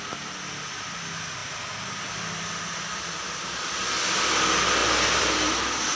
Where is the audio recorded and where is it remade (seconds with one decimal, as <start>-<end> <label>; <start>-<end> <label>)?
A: 0.0-5.9 recorded